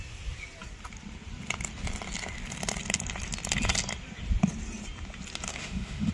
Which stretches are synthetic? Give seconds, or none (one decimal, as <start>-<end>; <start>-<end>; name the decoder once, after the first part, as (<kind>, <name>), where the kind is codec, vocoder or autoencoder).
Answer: 5.5-6.1 (autoencoder, DAC-VAE)